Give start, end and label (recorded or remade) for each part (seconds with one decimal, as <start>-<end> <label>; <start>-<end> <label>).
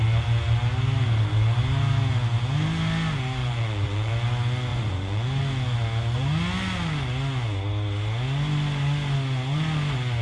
0.0-3.4 recorded; 3.4-4.1 remade; 4.1-4.7 recorded; 4.7-5.4 remade; 5.4-10.2 recorded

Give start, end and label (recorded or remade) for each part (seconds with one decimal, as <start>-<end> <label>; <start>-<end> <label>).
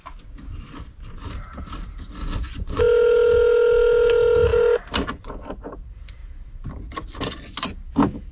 0.0-2.2 recorded; 2.2-2.8 remade; 2.8-8.3 recorded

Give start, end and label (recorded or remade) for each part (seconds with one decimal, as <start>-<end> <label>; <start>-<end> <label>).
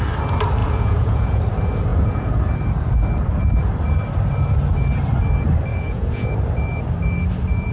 0.0-0.6 recorded; 0.6-1.4 remade; 1.4-1.9 recorded; 1.9-2.4 remade; 2.4-5.7 recorded; 5.7-6.3 remade; 6.3-7.7 recorded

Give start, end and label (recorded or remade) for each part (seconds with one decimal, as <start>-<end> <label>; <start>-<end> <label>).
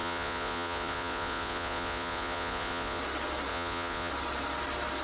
0.0-3.0 remade; 3.0-3.5 recorded; 3.5-4.1 remade; 4.1-5.0 recorded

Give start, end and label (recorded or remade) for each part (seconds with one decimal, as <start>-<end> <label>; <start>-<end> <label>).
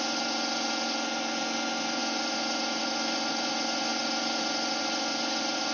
0.0-5.7 recorded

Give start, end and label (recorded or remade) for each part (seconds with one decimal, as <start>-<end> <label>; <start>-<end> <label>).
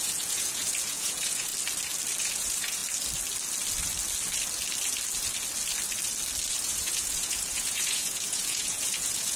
0.0-1.5 remade; 1.5-2.2 recorded; 2.2-2.8 remade; 2.8-6.5 recorded; 6.5-9.4 remade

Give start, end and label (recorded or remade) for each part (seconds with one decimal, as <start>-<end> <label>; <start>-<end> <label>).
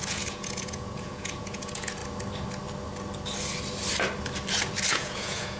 0.0-2.0 remade; 2.0-4.9 recorded; 4.9-5.6 remade